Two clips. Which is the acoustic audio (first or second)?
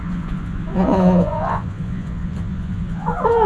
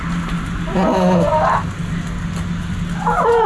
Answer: second